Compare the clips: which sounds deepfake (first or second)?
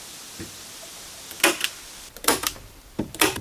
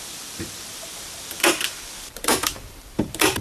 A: second